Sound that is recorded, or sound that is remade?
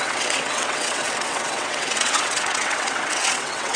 remade